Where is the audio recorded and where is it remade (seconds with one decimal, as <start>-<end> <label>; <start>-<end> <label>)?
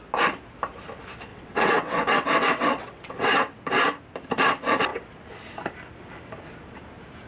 0.0-1.3 recorded; 1.3-3.7 remade; 3.7-7.3 recorded